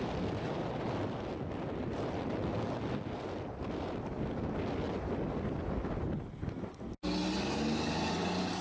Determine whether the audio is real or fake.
real